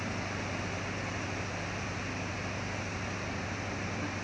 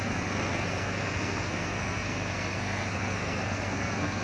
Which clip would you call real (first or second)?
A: first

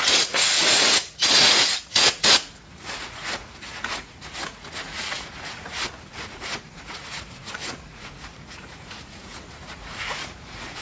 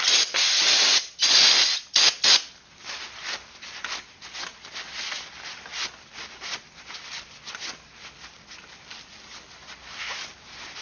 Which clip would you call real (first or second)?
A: second